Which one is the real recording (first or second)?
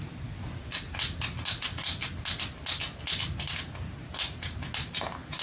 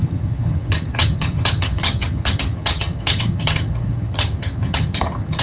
first